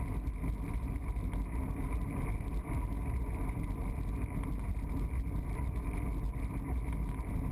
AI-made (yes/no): no